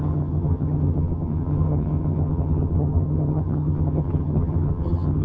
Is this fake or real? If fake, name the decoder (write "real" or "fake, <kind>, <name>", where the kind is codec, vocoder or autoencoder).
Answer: fake, vocoder, HiFi-GAN